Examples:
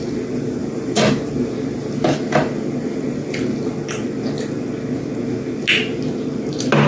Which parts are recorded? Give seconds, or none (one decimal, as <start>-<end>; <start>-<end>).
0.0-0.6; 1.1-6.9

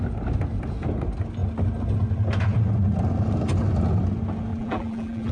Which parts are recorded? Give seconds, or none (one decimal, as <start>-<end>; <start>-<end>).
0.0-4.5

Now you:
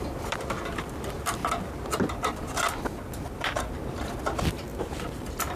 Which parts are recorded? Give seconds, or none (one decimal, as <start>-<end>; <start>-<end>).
1.4-4.8